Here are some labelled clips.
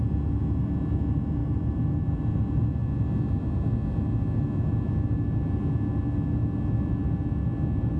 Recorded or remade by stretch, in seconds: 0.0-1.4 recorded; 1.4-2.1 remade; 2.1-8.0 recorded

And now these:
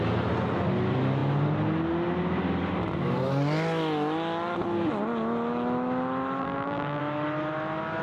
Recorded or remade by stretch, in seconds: 0.0-6.4 recorded; 6.4-7.0 remade; 7.0-8.0 recorded

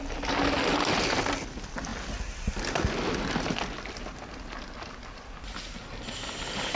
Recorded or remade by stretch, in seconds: 0.0-6.8 recorded